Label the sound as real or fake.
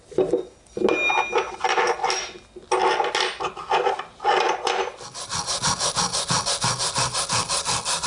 real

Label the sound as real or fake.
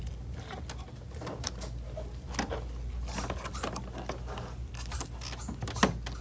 real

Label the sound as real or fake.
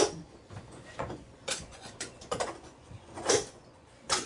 fake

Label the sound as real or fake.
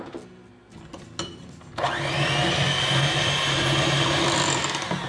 real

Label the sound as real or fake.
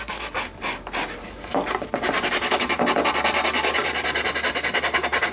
real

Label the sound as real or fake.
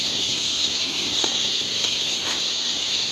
fake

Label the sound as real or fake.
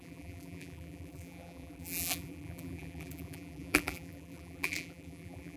fake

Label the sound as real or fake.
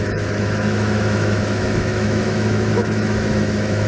fake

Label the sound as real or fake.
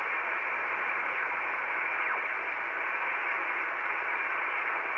real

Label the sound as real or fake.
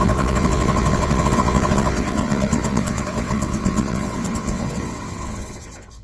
fake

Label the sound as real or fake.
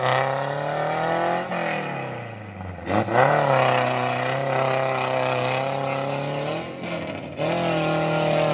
real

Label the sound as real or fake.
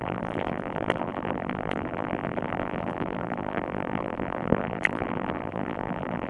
fake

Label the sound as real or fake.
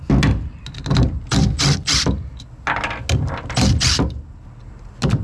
real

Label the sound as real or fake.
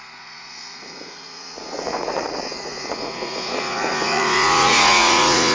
fake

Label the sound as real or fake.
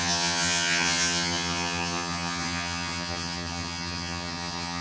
fake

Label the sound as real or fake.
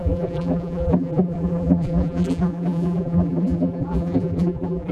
fake